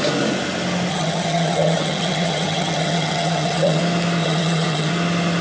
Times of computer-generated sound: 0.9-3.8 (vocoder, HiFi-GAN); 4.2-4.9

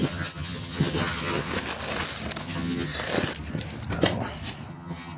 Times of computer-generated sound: 0.0-1.5 (vocoder, HiFi-GAN); 2.4-2.9; 4.7-5.2

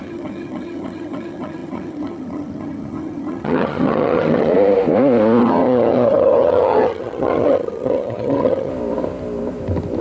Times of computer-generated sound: 0.0-4.5 (vocoder, HiFi-GAN); 5.4-8.7

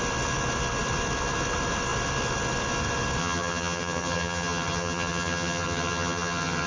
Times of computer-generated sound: 3.2-6.7 (vocoder, HiFi-GAN)

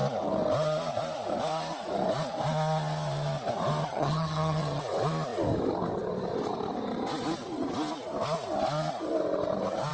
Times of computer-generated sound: 3.9-4.8 (vocoder, HiFi-GAN)